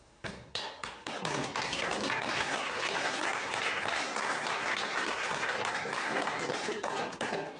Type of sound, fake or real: fake